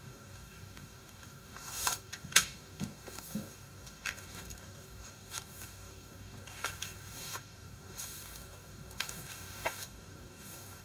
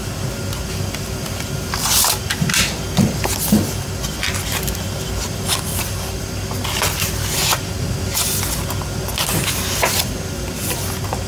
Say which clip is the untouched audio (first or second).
second